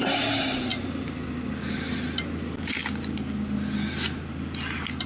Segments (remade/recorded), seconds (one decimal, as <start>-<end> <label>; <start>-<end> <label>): 0.0-5.1 recorded